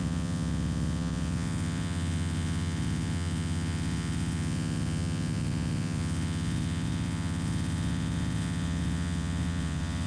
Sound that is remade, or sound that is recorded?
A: remade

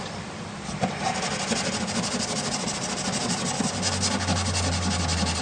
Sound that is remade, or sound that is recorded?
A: recorded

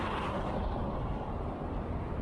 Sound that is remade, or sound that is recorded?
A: recorded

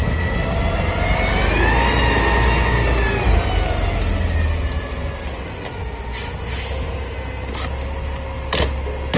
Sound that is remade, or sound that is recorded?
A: recorded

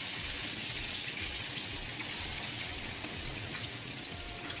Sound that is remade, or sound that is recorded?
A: remade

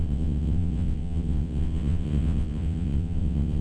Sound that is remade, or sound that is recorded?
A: remade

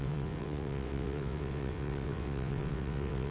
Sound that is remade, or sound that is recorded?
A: remade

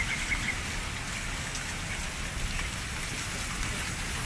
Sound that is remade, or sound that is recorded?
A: recorded